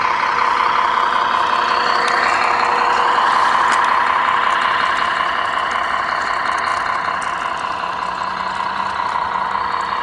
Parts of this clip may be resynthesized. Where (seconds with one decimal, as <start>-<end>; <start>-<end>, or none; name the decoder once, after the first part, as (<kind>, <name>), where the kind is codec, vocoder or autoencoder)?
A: none

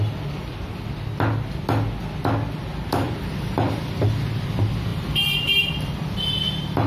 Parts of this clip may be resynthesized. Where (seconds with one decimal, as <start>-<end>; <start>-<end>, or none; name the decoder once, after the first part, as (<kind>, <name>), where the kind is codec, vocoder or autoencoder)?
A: 2.7-3.9 (vocoder, BigVGAN v2); 4.9-6.3

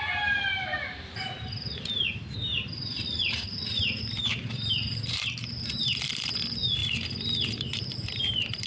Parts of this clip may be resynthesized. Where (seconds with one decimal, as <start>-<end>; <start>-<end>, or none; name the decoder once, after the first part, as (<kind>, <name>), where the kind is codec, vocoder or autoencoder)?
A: 0.7-5.5 (vocoder, BigVGAN v2); 6.8-8.1

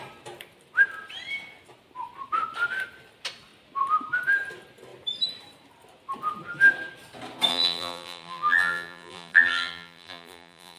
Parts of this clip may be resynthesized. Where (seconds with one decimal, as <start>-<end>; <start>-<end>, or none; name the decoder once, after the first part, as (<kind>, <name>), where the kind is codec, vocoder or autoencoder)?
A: 7.5-10.8 (vocoder, BigVGAN v2)